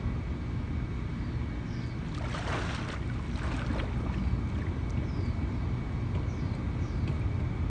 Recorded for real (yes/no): yes